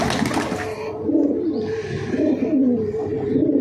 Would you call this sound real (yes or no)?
yes